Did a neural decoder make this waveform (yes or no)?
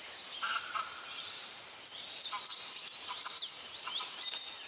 yes